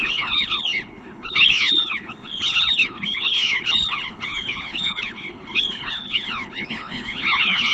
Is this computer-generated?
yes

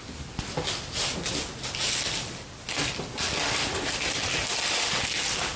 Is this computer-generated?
no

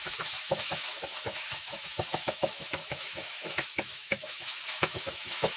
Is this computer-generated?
yes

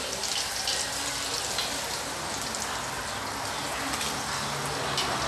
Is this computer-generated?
no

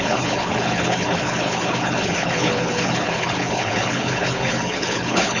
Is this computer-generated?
yes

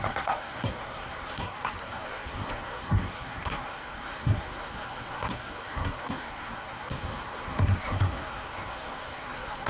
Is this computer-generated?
yes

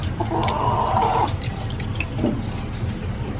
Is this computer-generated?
no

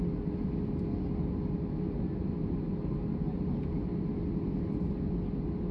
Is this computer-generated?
no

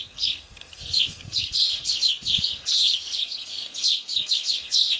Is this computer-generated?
yes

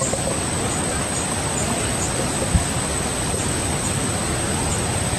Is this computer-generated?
no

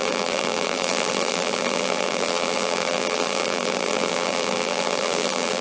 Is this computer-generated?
yes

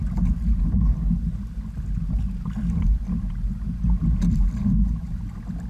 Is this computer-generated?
no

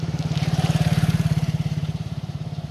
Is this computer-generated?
yes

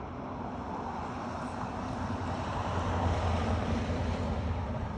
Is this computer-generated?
yes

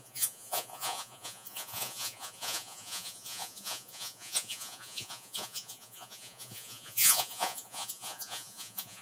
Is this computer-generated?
yes